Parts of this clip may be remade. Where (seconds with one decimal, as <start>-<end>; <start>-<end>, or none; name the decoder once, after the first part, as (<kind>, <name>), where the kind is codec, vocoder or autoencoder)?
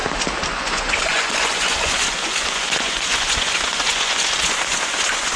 0.5-5.4 (vocoder, Vocos)